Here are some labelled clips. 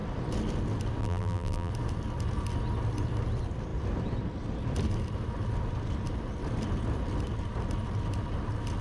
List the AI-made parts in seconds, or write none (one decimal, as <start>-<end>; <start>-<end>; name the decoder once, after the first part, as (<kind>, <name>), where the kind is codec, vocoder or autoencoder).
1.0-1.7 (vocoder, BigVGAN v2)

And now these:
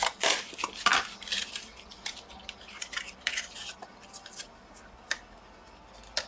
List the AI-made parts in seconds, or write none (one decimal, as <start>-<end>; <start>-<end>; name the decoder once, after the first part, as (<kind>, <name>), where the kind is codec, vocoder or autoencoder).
0.0-6.3 (vocoder, BigVGAN v2)

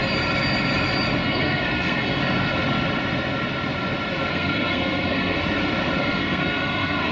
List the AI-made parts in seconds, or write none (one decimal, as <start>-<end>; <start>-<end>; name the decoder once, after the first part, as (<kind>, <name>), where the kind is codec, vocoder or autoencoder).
1.2-2.2 (codec, SNAC); 4.3-5.4; 6.0-7.1